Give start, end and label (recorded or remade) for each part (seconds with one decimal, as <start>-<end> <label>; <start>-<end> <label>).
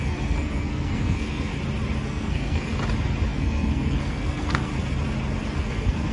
0.0-1.5 remade; 1.5-2.0 recorded; 2.0-2.7 remade; 2.7-3.3 recorded; 3.3-4.7 remade; 4.7-5.6 recorded; 5.6-6.1 remade